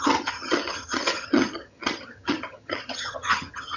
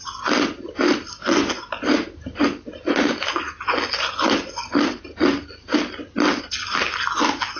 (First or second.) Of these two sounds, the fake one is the first